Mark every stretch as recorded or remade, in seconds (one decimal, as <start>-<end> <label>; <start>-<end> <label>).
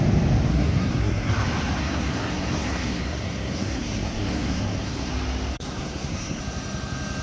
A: 0.0-0.5 recorded; 0.5-1.3 remade; 1.3-1.8 recorded; 1.8-5.1 remade; 5.1-5.5 recorded; 5.5-6.4 remade; 6.4-7.2 recorded